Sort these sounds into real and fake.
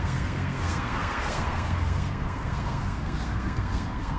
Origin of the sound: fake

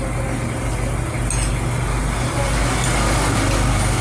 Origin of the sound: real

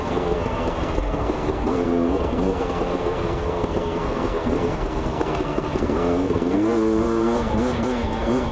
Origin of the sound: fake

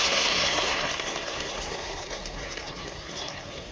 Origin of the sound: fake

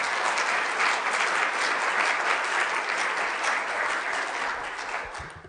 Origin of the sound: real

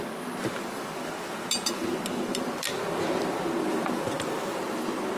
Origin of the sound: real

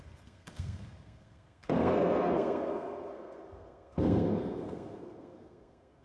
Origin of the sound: fake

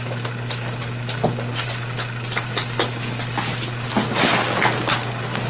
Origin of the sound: real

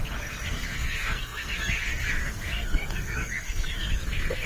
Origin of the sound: fake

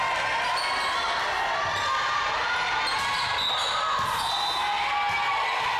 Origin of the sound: real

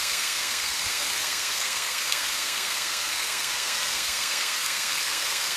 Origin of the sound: fake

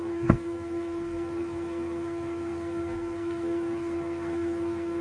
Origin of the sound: fake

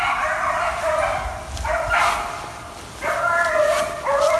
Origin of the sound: real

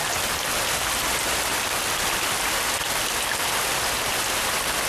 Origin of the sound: real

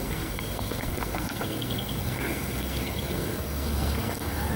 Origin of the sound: fake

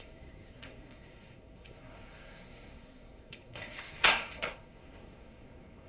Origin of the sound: fake